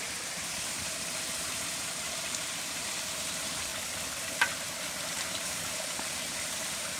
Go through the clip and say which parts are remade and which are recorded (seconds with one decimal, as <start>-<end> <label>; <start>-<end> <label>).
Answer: 0.0-3.7 remade; 3.7-5.1 recorded; 5.1-7.0 remade